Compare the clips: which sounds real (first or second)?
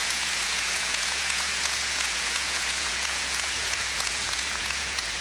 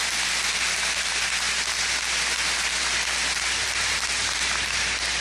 second